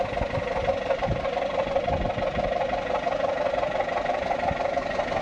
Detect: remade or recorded recorded